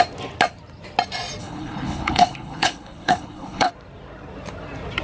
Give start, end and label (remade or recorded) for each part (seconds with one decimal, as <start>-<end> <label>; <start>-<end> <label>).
0.0-1.4 recorded; 1.4-3.7 remade; 3.7-5.0 recorded

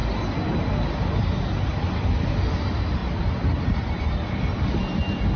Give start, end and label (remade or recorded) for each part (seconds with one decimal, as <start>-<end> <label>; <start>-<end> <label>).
0.0-5.4 recorded

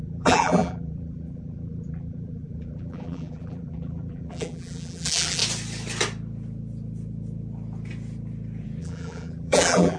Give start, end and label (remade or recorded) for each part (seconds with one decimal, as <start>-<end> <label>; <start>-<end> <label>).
0.0-5.4 remade; 5.4-8.8 recorded; 8.8-10.0 remade

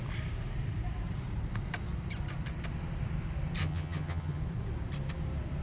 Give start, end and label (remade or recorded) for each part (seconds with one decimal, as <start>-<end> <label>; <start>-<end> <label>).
0.0-3.6 recorded; 3.6-4.4 remade; 4.4-5.6 recorded

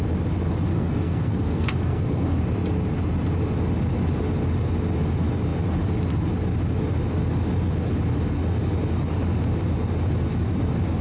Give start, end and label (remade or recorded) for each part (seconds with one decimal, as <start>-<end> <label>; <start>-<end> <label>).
0.0-0.7 recorded; 0.7-2.4 remade; 2.4-11.0 recorded

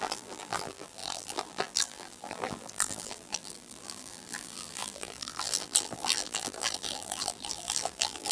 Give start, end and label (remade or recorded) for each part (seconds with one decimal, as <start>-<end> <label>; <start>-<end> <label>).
0.0-8.3 remade

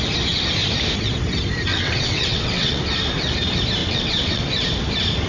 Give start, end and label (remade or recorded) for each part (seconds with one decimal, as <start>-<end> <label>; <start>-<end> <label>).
0.0-1.7 recorded; 1.7-2.8 remade; 2.8-3.8 recorded; 3.8-4.4 remade; 4.4-5.3 recorded

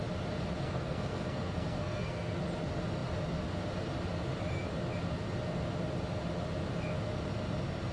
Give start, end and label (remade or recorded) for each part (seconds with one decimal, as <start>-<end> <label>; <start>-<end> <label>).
0.0-0.6 recorded; 0.6-2.4 remade; 2.4-7.9 recorded